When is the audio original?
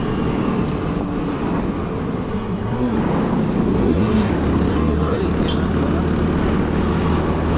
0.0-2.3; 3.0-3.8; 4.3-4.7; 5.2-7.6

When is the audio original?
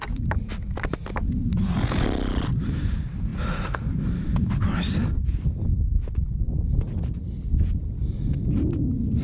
0.0-9.2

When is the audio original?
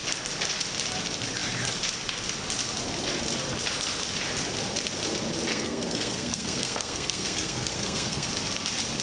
0.0-5.5; 8.3-9.0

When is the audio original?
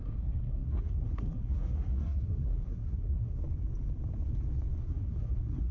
3.4-4.8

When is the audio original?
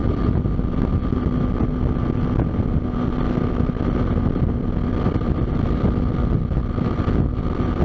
0.0-7.8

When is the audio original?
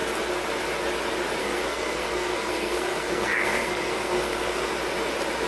0.0-1.4; 4.7-5.5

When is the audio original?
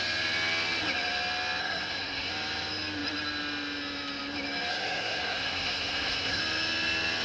0.0-1.6; 2.3-4.7; 6.4-7.2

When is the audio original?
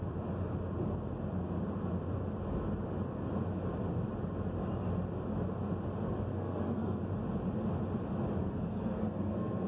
0.0-6.3; 7.0-8.4